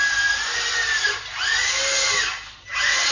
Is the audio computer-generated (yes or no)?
no